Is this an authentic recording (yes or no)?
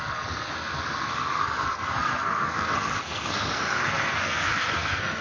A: no